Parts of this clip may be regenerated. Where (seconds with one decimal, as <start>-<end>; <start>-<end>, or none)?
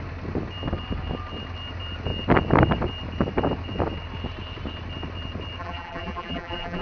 5.6-6.8